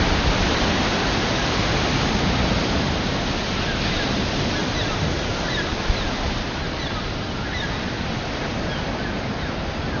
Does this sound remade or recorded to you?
recorded